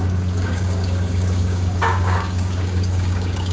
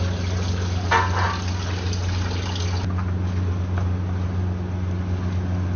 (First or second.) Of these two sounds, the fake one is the first